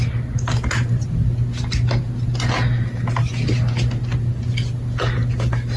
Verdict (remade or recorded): recorded